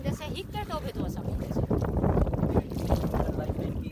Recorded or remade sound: recorded